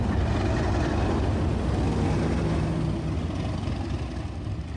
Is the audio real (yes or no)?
yes